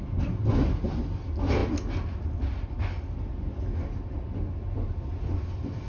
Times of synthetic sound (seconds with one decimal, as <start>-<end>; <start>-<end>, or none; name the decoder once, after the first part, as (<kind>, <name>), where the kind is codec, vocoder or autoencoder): none